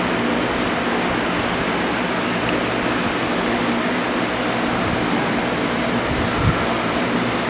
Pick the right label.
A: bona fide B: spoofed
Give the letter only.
A